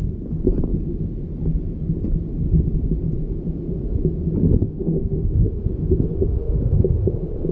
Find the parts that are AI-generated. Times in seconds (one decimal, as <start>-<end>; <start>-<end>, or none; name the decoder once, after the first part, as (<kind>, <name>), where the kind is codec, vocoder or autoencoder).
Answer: 4.6-7.1 (autoencoder, DAC-VAE)